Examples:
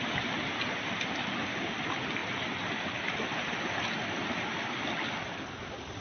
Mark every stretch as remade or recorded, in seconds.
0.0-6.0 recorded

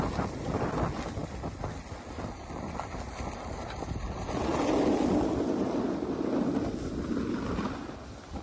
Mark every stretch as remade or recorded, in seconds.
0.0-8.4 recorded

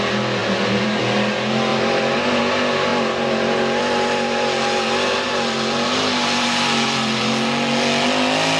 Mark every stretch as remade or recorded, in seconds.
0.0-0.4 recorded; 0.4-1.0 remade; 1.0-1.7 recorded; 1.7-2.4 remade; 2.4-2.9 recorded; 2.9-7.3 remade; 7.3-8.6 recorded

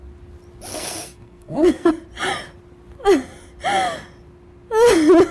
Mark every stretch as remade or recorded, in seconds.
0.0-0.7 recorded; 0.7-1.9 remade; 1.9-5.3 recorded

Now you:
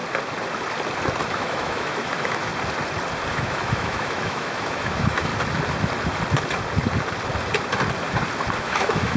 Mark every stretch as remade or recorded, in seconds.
0.0-1.3 recorded; 1.3-2.5 remade; 2.5-3.3 recorded; 3.3-5.3 remade; 5.3-8.6 recorded; 8.6-9.2 remade